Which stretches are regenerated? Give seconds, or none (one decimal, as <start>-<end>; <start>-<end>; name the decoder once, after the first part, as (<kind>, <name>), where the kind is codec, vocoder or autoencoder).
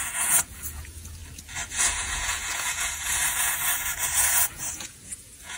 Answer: 0.0-1.2 (vocoder, Vocos); 1.7-5.6